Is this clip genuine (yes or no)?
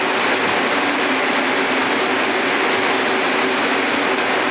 yes